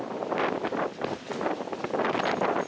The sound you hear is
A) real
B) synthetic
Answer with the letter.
A